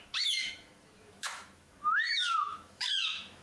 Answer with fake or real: fake